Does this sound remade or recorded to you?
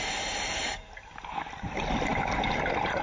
recorded